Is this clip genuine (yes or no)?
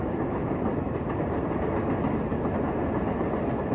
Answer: yes